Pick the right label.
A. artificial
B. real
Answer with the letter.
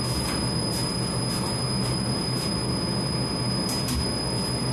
B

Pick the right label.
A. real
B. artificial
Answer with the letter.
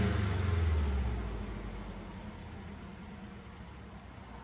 A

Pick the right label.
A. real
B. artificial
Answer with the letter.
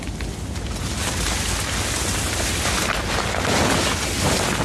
A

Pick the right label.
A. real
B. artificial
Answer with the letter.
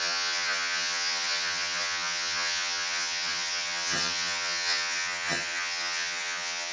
B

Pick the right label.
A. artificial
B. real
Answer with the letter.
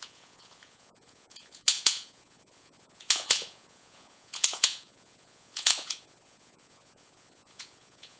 A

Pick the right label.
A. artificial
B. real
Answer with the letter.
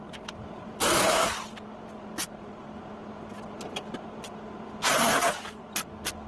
B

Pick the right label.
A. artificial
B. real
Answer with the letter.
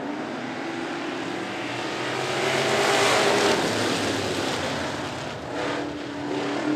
B